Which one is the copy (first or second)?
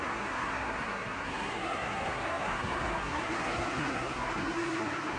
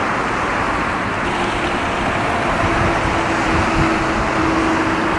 first